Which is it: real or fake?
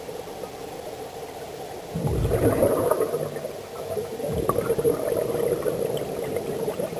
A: real